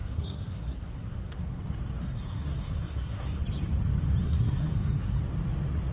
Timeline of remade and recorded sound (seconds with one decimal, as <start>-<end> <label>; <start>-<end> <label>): 0.0-1.6 remade; 1.6-2.0 recorded; 2.0-3.4 remade; 3.4-4.2 recorded; 4.2-5.2 remade; 5.2-5.9 recorded